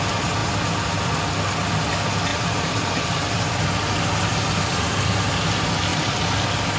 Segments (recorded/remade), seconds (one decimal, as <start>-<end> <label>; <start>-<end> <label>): 0.0-2.3 recorded; 2.3-3.5 remade; 3.5-6.8 recorded